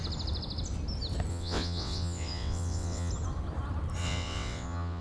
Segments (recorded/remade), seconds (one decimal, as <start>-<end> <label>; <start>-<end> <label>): 0.0-1.3 recorded; 1.3-3.1 remade; 3.1-4.0 recorded; 4.0-5.0 remade